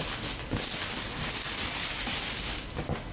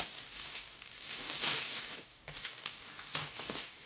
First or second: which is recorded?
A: first